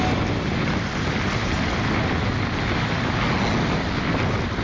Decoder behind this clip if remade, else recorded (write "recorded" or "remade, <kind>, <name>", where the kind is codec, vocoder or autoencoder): recorded